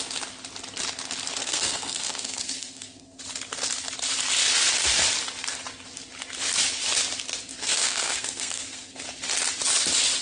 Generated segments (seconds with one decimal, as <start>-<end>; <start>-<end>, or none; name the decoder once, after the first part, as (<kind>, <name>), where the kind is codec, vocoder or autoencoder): 1.4-3.2 (codec, SNAC); 7.5-9.0